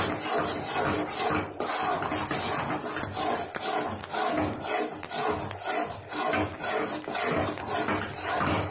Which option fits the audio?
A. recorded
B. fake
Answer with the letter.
A